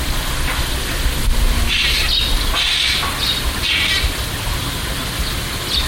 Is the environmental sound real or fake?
real